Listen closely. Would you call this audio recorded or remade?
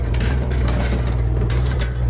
remade